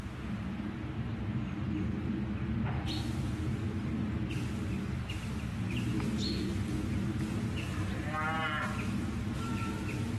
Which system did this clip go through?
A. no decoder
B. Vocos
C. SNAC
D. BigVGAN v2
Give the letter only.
A